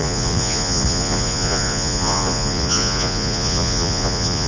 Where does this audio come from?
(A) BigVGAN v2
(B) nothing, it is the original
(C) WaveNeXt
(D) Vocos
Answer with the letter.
D